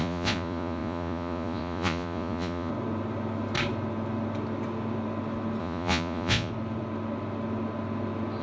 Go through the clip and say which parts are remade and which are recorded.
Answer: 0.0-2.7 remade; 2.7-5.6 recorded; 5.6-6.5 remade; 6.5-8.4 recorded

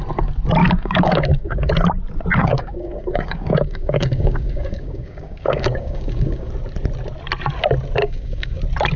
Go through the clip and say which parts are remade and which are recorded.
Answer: 0.0-0.6 recorded; 0.6-1.7 remade; 1.7-2.4 recorded; 2.4-6.5 remade; 6.5-8.0 recorded; 8.0-8.6 remade; 8.6-9.0 recorded

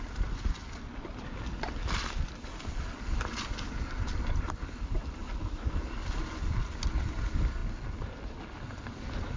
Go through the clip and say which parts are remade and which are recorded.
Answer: 0.0-0.6 remade; 0.6-5.7 recorded; 5.7-7.6 remade; 7.6-8.8 recorded; 8.8-9.4 remade

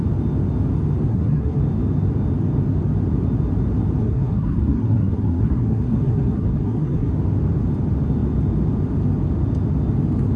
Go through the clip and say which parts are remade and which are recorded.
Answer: 0.0-1.1 recorded; 1.1-1.6 remade; 1.6-4.0 recorded; 4.0-7.1 remade; 7.1-10.4 recorded

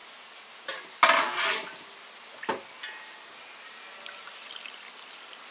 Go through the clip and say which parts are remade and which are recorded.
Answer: 0.0-5.5 recorded

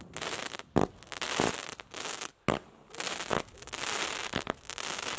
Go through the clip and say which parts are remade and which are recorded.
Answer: 0.0-5.2 recorded

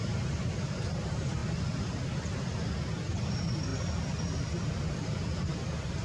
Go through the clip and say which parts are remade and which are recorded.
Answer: 0.0-1.4 remade; 1.4-3.1 recorded; 3.1-3.7 remade; 3.7-4.9 recorded; 4.9-6.0 remade